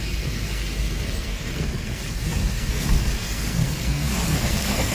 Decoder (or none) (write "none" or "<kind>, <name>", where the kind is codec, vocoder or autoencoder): codec, SNAC